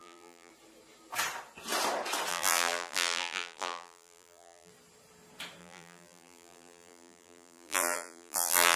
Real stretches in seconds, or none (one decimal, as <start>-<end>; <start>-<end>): 0.5-2.3; 4.7-5.6